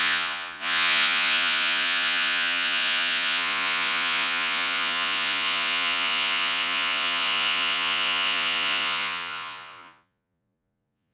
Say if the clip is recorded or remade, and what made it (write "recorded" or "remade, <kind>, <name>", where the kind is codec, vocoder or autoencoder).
remade, vocoder, Vocos